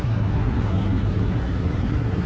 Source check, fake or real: fake